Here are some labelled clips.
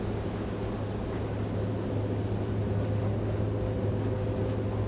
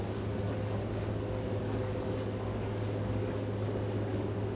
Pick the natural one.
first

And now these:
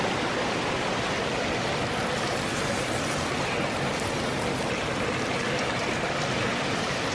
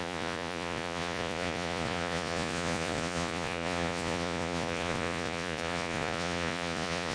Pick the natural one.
first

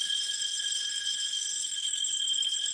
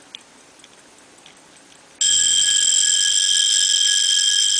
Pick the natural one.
second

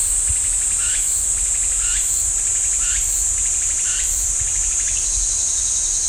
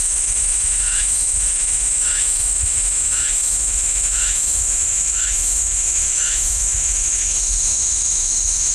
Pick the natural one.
first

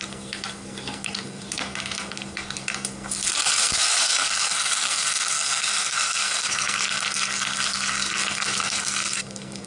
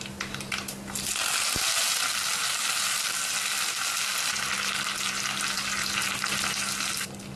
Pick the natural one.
second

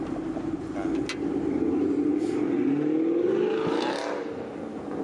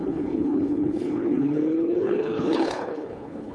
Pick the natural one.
first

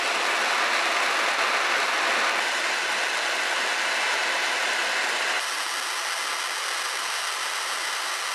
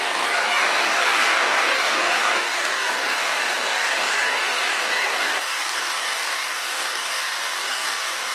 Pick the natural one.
first